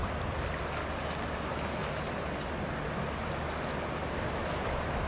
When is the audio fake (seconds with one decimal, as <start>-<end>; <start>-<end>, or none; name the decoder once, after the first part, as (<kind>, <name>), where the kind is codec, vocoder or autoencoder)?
none